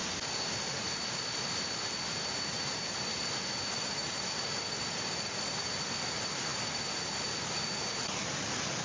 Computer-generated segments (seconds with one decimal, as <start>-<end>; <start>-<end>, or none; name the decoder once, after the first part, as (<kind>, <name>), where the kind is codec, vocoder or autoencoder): none